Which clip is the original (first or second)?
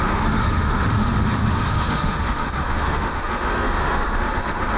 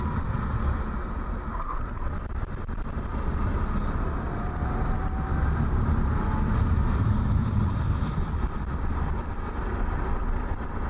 second